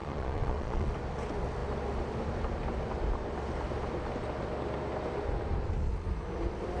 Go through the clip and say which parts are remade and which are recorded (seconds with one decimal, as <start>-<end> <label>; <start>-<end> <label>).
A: 0.0-0.9 remade; 0.9-6.8 recorded